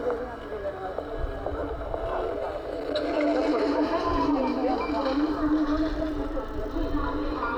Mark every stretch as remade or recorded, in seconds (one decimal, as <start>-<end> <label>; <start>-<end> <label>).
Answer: 0.0-3.5 recorded; 3.5-6.5 remade; 6.5-7.6 recorded